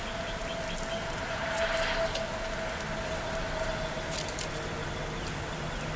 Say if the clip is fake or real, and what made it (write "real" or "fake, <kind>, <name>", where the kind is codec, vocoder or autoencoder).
real